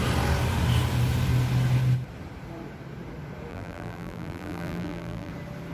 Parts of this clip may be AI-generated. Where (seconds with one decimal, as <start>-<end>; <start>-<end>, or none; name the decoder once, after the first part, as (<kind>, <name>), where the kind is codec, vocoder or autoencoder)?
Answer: 3.5-5.3 (vocoder, BigVGAN v2)